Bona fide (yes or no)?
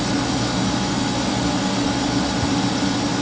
yes